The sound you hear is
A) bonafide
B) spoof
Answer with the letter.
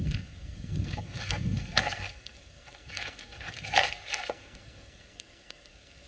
B